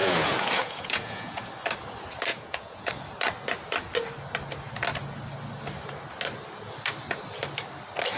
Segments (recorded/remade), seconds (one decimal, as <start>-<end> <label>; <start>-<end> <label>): 0.0-1.5 remade; 1.5-2.3 recorded; 2.3-2.9 remade; 2.9-8.2 recorded